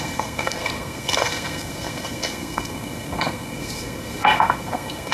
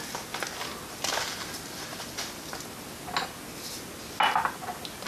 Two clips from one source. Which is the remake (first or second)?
first